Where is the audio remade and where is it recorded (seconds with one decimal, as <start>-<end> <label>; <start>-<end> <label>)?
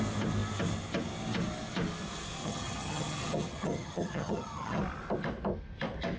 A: 0.0-2.4 recorded; 2.4-4.8 remade; 4.8-6.2 recorded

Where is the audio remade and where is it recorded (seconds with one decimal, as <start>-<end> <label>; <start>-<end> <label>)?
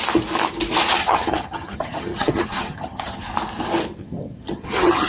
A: 0.0-1.0 recorded; 1.0-3.2 remade; 3.2-4.0 recorded; 4.0-5.1 remade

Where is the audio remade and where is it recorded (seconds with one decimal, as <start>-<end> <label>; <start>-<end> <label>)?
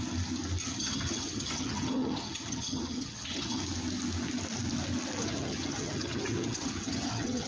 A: 0.0-0.6 recorded; 0.6-3.6 remade; 3.6-5.2 recorded; 5.2-7.5 remade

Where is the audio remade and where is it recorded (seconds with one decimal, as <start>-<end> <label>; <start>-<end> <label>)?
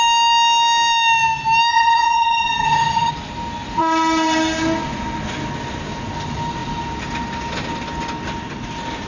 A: 0.0-1.7 recorded; 1.7-3.1 remade; 3.1-9.1 recorded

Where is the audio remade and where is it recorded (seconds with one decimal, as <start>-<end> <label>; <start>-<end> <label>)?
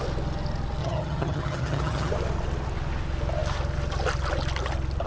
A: 0.0-0.8 recorded; 0.8-2.1 remade; 2.1-5.1 recorded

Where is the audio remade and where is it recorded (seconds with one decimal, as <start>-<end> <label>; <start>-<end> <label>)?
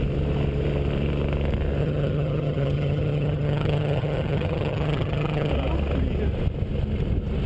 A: 0.0-1.8 recorded; 1.8-5.5 remade; 5.5-7.5 recorded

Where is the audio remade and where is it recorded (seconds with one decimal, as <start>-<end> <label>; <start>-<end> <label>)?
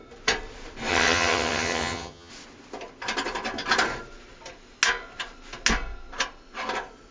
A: 0.0-0.9 recorded; 0.9-2.3 remade; 2.3-7.1 recorded